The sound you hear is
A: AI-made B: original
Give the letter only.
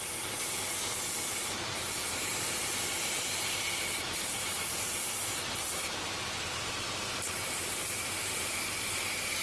A